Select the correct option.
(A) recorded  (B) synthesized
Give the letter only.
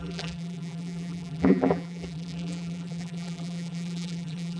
B